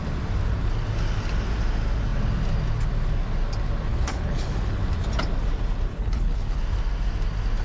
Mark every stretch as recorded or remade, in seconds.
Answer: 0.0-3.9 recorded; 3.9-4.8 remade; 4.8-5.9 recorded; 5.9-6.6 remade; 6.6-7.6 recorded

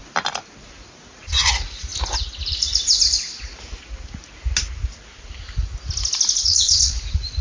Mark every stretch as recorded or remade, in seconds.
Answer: 0.0-1.0 recorded; 1.0-1.9 remade; 1.9-6.3 recorded; 6.3-7.4 remade

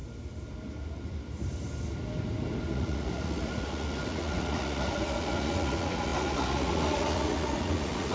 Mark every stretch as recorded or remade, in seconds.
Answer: 0.0-2.7 recorded; 2.7-8.1 remade

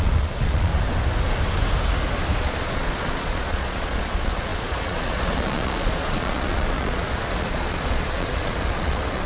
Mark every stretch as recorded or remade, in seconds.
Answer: 0.0-0.7 remade; 0.7-2.4 recorded; 2.4-9.3 remade

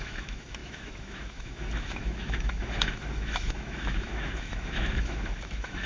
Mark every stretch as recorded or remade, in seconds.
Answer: 0.0-5.9 remade